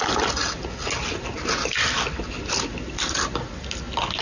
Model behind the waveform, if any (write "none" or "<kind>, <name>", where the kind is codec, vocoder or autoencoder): none